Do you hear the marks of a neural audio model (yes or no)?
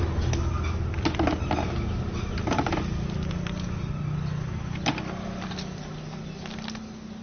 no